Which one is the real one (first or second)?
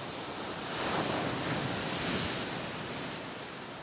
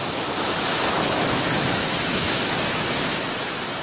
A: first